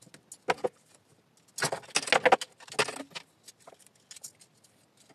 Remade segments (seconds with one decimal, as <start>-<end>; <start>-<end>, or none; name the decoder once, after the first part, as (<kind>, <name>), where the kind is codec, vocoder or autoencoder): none